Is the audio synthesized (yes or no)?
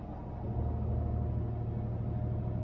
no